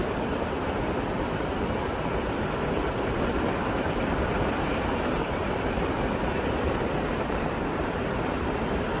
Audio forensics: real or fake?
fake